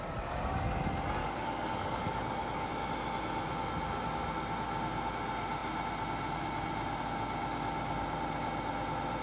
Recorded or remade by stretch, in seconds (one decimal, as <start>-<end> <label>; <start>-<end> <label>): 0.0-1.2 recorded; 1.2-2.7 remade; 2.7-9.2 recorded